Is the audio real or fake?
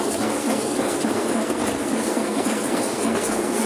fake